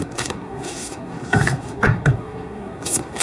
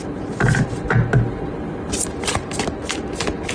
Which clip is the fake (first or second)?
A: first